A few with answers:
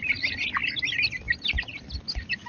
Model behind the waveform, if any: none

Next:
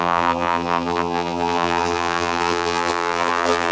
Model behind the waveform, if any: vocoder, BigVGAN v2